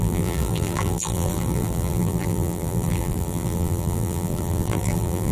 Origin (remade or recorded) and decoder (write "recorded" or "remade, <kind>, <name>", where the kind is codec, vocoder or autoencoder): remade, vocoder, BigVGAN v2